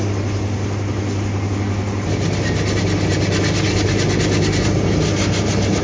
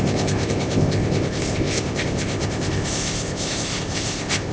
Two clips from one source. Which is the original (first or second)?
first